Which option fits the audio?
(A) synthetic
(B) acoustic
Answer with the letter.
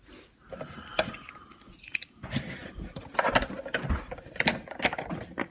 B